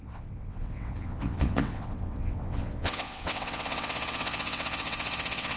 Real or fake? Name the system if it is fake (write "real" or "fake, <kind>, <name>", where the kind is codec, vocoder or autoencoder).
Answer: fake, vocoder, WaveNeXt